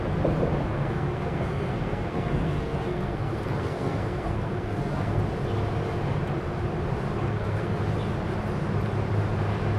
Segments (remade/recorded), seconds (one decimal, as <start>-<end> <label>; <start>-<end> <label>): 0.0-0.7 recorded; 0.7-5.2 remade; 5.2-7.1 recorded; 7.1-7.8 remade; 7.8-9.8 recorded